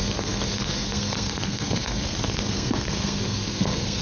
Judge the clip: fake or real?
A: fake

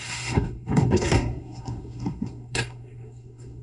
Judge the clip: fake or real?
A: fake